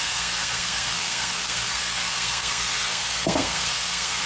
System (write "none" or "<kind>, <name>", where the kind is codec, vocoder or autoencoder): codec, SNAC